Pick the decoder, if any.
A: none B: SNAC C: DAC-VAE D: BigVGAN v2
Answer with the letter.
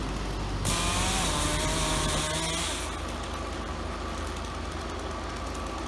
A